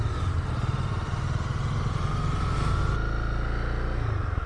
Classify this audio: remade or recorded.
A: recorded